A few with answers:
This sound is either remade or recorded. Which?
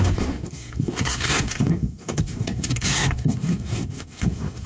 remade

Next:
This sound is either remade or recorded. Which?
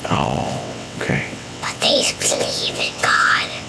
remade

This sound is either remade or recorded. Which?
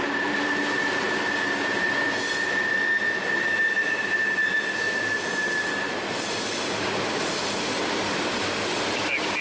recorded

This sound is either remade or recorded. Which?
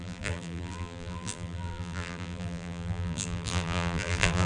remade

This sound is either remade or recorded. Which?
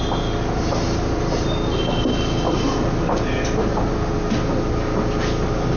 recorded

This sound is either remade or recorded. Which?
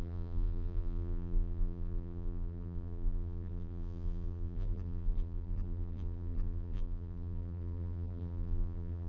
remade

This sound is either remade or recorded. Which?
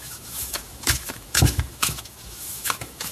remade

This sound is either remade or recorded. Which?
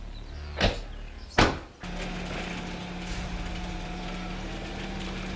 recorded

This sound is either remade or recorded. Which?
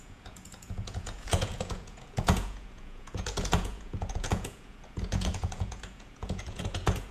remade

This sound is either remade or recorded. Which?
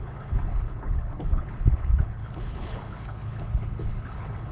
remade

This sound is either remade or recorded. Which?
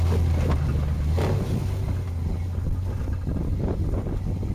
recorded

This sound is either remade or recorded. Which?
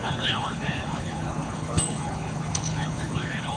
remade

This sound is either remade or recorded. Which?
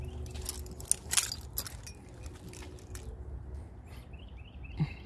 recorded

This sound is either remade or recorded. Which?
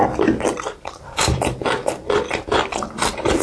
recorded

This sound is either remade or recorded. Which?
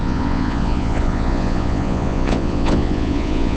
remade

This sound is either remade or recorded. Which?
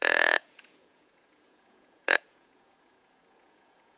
remade